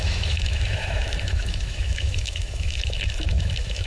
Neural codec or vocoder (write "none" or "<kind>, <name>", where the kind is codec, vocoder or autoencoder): autoencoder, DAC-VAE